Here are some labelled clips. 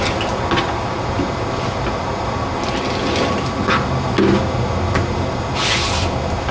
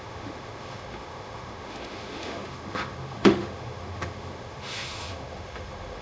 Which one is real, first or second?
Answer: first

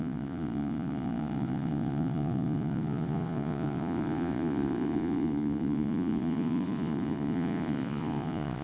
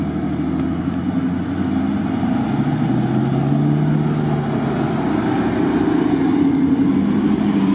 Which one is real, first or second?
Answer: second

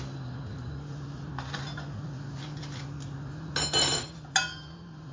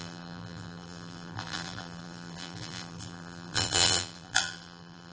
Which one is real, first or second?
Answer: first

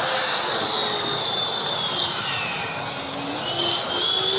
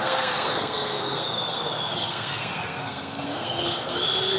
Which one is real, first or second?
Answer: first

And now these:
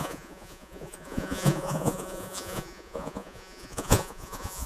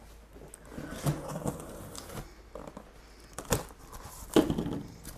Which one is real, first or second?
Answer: second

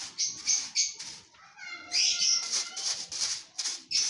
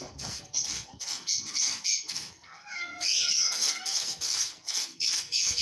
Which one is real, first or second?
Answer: first